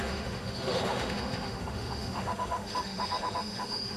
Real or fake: fake